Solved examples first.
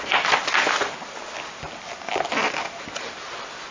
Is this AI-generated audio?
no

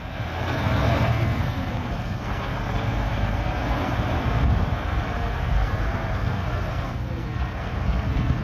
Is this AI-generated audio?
yes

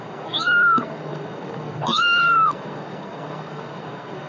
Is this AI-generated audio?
yes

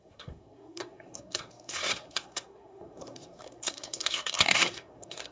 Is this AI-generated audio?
yes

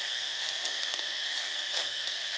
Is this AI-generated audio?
yes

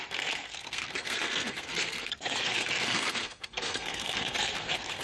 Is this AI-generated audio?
yes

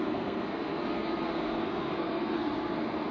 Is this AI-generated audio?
yes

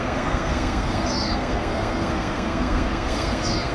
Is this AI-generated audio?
yes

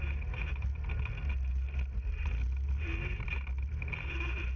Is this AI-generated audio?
no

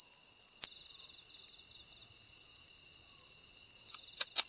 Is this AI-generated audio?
no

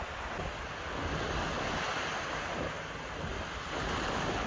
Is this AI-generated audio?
no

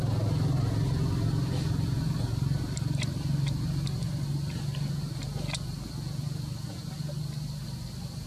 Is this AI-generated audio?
no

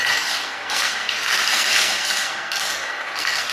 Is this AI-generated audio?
yes